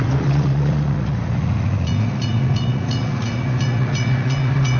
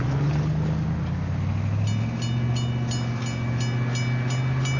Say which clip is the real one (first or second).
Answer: second